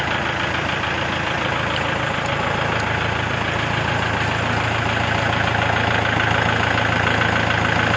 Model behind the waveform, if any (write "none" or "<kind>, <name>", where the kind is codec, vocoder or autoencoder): none